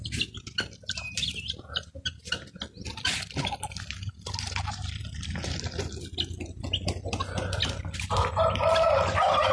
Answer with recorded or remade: recorded